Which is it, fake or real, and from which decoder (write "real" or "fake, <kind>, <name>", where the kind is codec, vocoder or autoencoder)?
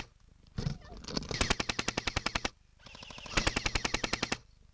real